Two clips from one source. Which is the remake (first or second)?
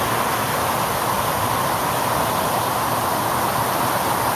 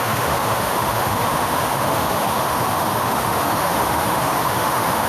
second